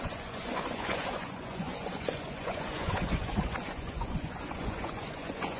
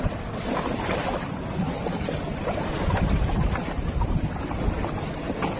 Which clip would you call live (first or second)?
second